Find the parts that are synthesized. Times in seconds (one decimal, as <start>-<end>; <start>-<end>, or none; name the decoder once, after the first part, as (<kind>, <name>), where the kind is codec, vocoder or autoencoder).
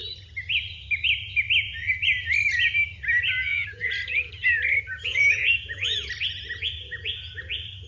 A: 3.5-4.3 (vocoder, Vocos); 5.1-6.1